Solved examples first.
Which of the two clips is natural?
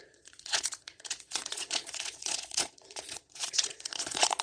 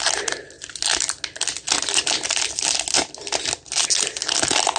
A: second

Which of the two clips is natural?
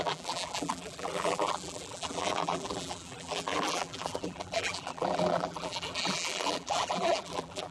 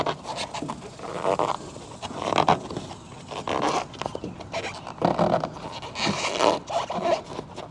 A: second